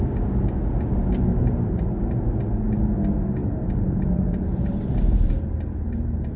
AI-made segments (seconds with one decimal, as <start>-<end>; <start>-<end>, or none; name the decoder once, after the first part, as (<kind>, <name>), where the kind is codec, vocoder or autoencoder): 1.3-2.2 (vocoder, BigVGAN v2); 3.4-5.5